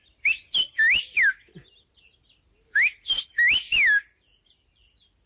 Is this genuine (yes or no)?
yes